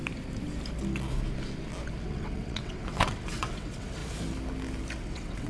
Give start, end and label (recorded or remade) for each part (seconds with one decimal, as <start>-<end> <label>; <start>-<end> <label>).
0.0-2.0 recorded; 2.0-4.0 remade; 4.0-5.0 recorded; 5.0-5.5 remade

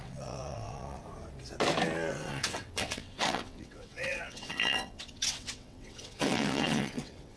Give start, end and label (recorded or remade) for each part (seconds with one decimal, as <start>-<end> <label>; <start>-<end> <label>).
0.0-1.0 remade; 1.0-2.1 recorded; 2.1-7.4 remade

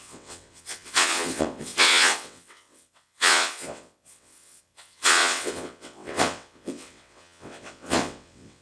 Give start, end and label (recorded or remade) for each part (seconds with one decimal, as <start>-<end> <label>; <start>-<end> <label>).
0.0-8.6 remade

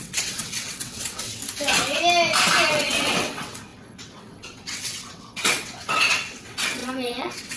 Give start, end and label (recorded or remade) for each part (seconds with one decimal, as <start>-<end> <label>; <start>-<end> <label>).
0.0-1.4 remade; 1.4-2.7 recorded; 2.7-7.6 remade

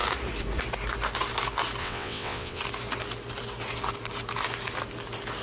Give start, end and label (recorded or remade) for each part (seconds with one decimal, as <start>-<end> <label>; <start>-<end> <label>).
0.0-1.8 recorded; 1.8-2.6 remade; 2.6-5.4 recorded

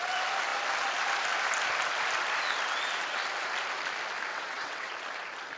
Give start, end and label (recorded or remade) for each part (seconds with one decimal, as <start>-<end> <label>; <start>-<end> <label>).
0.0-4.3 recorded; 4.3-4.9 remade; 4.9-5.6 recorded

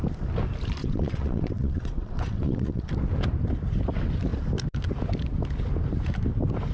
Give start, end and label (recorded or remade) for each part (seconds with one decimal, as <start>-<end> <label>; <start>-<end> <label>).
0.0-0.8 recorded; 0.8-2.9 remade; 2.9-6.7 recorded

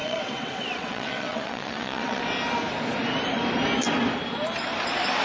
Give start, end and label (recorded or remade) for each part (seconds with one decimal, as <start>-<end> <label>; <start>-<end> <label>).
0.0-2.2 remade; 2.2-5.2 recorded